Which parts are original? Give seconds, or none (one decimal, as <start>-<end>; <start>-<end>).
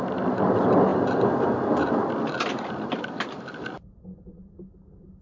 0.0-5.2